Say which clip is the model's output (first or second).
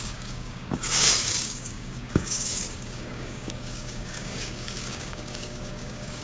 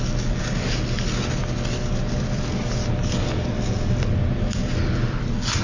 first